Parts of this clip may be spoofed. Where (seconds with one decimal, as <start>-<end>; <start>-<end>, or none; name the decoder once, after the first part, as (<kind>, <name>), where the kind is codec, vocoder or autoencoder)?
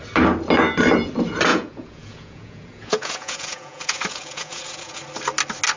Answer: 1.5-5.0 (vocoder, Vocos)